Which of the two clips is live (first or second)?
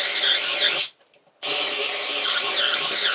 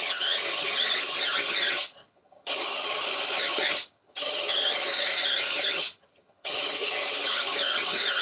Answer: first